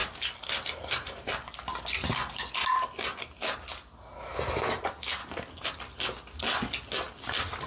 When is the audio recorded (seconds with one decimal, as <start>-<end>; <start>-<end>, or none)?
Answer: 0.0-0.8; 1.7-4.7; 5.2-7.7